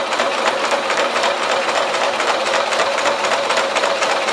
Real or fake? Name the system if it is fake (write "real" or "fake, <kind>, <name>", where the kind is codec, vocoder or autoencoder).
fake, vocoder, BigVGAN v2